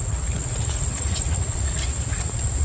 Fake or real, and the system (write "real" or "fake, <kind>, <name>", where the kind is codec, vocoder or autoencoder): fake, vocoder, Vocos